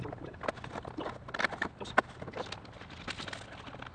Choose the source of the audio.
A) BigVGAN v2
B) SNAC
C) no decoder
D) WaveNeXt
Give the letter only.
C